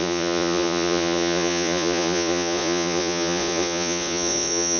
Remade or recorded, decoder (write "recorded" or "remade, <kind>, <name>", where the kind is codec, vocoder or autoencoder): remade, vocoder, Vocos